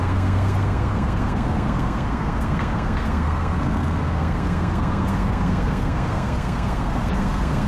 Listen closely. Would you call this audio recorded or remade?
remade